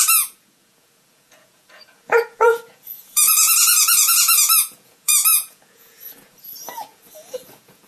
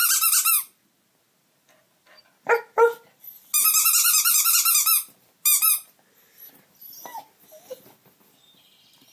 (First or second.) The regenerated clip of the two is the first